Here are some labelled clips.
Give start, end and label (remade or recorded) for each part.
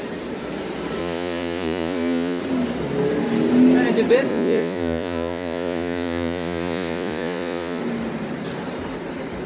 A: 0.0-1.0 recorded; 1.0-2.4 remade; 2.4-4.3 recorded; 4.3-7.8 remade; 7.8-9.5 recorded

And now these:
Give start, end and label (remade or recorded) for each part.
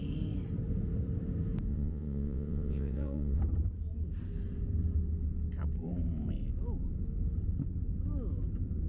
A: 0.0-1.7 recorded; 1.7-3.4 remade; 3.4-8.9 recorded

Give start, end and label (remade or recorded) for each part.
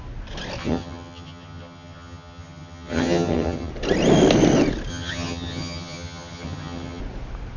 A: 0.0-0.6 recorded; 0.6-3.7 remade; 3.7-4.9 recorded; 4.9-7.0 remade; 7.0-7.6 recorded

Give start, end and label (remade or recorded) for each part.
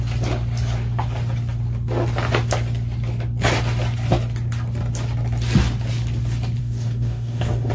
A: 0.0-6.6 recorded; 6.6-7.7 remade